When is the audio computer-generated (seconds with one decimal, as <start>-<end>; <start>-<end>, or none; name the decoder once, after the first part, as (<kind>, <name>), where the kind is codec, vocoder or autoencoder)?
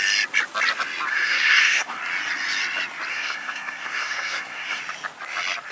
1.1-2.0 (codec, SNAC); 3.1-4.8